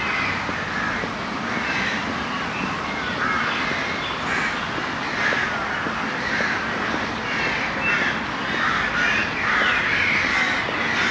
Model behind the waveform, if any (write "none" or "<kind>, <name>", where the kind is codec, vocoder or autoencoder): none